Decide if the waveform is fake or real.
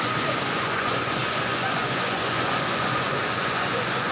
fake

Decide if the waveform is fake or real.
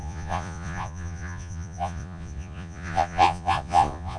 fake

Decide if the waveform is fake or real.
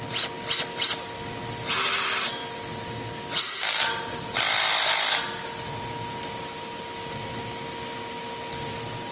real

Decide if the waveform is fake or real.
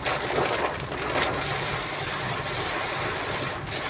real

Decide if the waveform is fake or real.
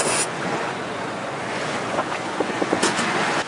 fake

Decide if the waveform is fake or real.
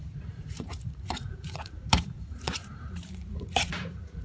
fake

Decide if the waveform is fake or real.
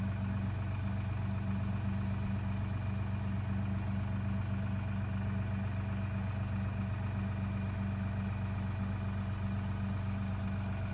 real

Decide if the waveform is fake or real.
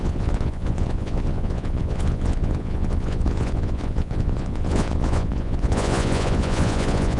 fake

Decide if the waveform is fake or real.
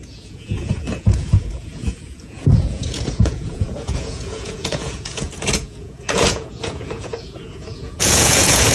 fake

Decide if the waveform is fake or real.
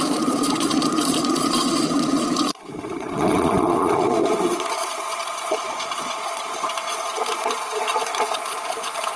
fake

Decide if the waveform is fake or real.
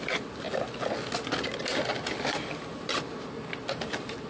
real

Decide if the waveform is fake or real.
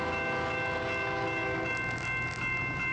real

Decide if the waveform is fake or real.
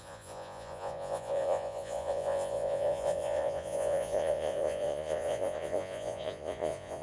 fake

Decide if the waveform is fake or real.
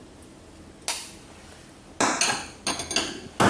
real